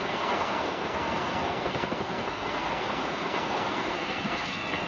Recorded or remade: remade